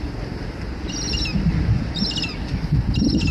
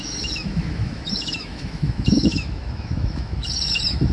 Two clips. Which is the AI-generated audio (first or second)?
second